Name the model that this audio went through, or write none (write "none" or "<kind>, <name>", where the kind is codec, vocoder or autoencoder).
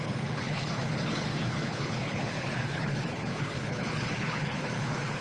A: codec, HILCodec